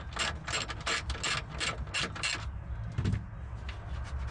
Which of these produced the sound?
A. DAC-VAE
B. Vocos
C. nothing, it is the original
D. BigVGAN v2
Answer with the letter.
C